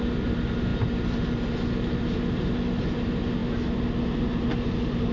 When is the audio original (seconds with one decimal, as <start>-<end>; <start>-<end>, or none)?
0.0-5.1